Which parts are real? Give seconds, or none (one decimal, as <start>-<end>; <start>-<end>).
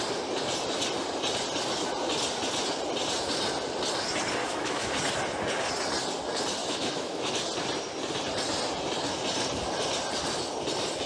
0.0-4.4; 4.9-6.6; 7.3-11.1